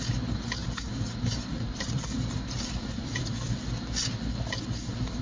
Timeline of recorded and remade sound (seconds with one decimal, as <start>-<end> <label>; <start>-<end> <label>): 0.0-0.6 recorded; 0.6-3.2 remade; 3.2-5.2 recorded